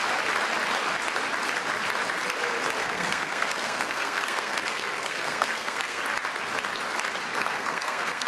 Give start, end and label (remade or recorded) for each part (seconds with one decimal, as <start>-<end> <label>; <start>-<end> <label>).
0.0-2.8 recorded; 2.8-6.0 remade; 6.0-7.3 recorded; 7.3-8.3 remade